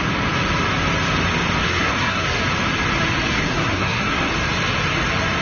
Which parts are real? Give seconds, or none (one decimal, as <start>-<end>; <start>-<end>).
0.0-1.6; 2.4-3.3; 4.3-5.4